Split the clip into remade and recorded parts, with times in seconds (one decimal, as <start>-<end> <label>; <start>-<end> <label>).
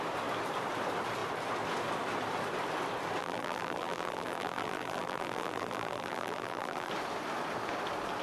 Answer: 0.0-3.2 recorded; 3.2-6.9 remade; 6.9-8.2 recorded